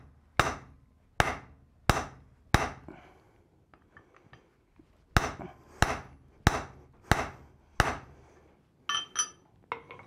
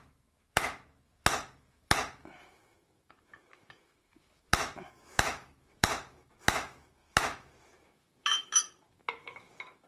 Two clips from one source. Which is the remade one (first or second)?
second